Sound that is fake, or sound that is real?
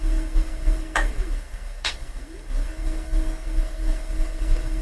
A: fake